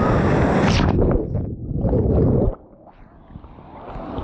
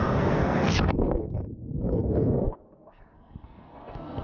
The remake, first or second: second